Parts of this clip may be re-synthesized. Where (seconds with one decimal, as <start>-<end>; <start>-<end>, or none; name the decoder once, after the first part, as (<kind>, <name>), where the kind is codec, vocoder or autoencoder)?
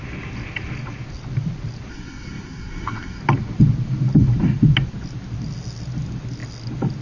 1.9-3.2 (codec, SNAC)